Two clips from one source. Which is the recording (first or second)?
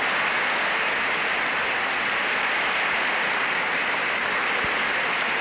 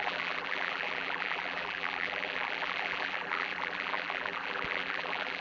first